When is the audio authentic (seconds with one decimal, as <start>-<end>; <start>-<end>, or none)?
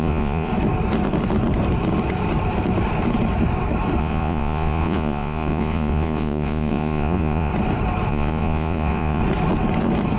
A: 0.5-4.0; 7.5-8.1; 9.2-10.2